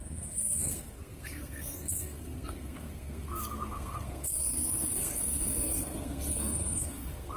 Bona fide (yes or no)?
no